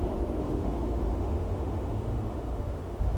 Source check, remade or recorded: remade